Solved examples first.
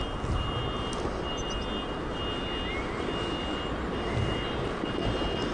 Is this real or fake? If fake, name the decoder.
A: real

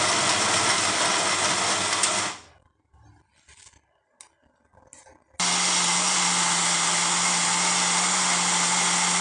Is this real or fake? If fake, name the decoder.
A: real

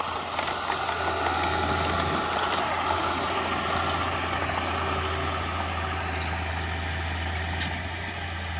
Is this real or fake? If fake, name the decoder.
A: real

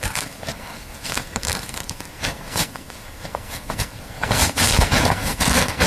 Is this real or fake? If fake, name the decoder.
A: fake, codec, SNAC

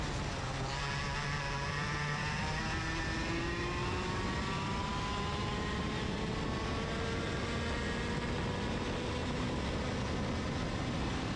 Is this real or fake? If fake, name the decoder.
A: real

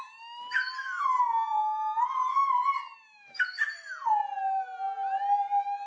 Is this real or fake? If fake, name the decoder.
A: real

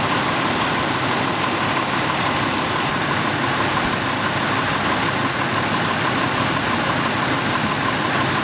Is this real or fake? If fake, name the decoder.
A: real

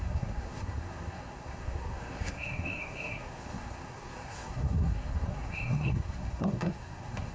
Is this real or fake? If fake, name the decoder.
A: fake, codec, SNAC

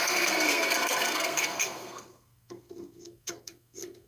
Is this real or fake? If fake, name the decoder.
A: fake, codec, SNAC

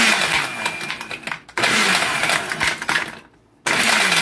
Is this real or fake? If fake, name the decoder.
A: real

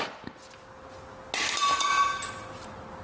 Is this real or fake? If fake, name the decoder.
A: real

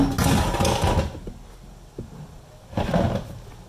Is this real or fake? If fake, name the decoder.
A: real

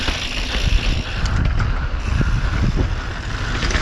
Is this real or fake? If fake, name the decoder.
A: real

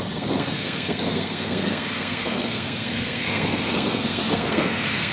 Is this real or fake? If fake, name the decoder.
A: fake, codec, SNAC